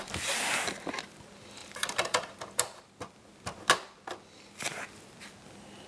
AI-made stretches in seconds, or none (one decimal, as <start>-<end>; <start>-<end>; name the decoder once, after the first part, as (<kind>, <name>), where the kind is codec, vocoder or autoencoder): 1.6-2.9 (vocoder, BigVGAN v2)